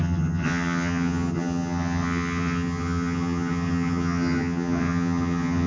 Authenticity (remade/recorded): remade